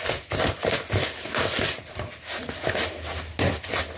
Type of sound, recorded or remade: recorded